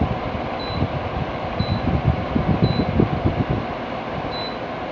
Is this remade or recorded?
recorded